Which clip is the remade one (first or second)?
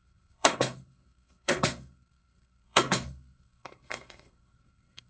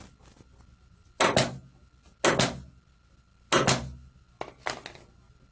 first